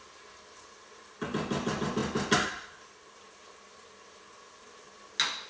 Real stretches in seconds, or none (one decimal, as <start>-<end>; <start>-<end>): 0.0-5.5